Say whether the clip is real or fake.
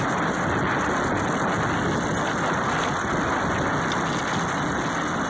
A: real